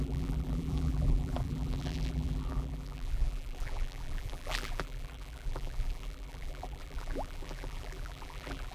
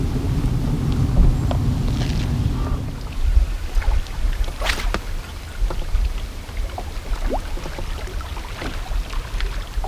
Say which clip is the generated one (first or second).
first